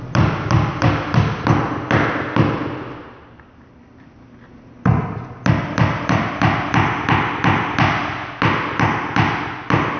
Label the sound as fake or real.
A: real